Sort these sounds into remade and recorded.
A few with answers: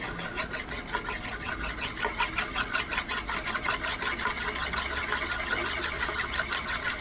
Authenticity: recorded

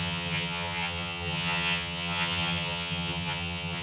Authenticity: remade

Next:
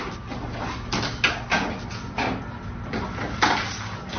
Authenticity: recorded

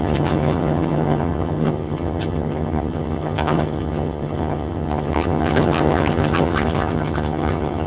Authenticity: remade